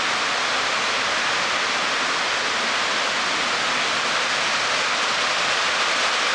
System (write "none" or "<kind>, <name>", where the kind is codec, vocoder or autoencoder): none